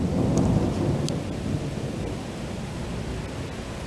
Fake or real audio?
real